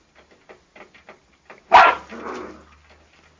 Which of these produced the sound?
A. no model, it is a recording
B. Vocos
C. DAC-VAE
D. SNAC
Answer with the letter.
A